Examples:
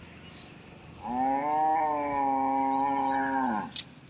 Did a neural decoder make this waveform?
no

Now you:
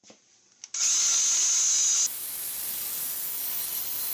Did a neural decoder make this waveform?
no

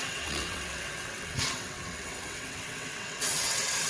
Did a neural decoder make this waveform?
yes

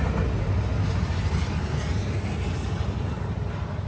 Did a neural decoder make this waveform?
no